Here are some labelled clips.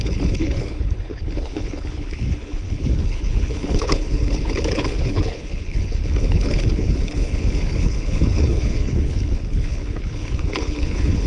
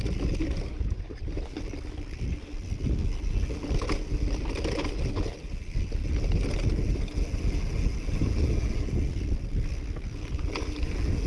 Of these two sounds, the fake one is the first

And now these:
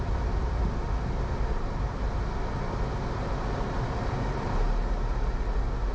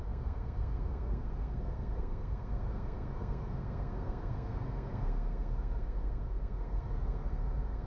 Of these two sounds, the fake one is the second